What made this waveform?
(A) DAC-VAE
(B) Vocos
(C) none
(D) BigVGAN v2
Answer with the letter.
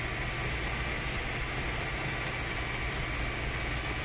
C